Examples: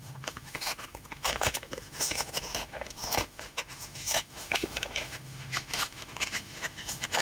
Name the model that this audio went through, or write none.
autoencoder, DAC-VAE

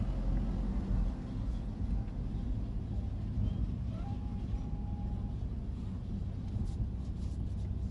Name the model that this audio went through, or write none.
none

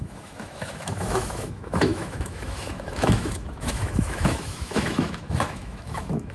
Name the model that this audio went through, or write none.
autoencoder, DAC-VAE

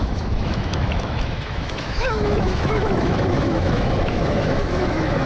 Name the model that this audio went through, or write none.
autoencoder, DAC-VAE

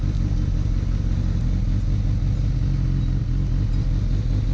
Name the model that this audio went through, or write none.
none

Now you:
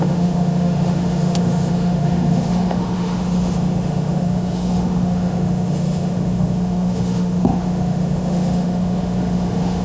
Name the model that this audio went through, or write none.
autoencoder, DAC-VAE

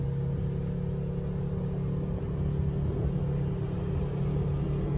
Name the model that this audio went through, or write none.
none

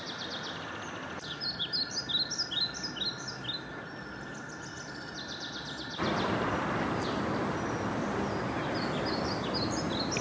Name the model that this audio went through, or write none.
none